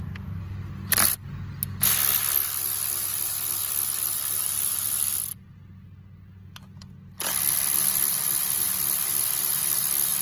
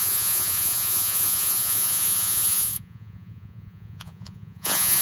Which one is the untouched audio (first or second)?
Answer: first